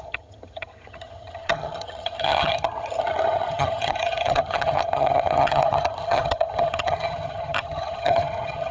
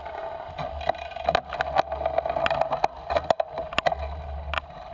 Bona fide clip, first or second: second